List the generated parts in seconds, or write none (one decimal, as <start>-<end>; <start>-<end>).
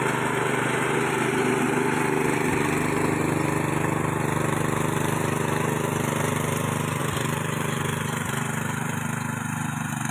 7.0-10.1